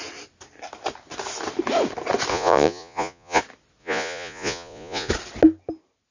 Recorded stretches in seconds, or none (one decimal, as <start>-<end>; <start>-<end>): 0.0-2.3; 3.4-3.8; 5.1-6.1